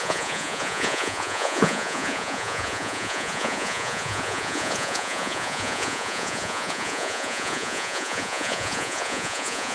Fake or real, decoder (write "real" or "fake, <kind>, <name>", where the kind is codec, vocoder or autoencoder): fake, vocoder, Vocos